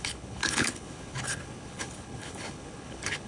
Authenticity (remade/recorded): remade